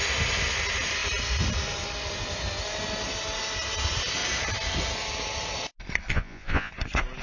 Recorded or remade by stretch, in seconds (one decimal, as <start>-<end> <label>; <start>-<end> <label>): 0.0-6.1 recorded; 6.1-6.7 remade; 6.7-7.2 recorded